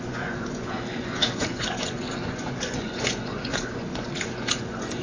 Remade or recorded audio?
remade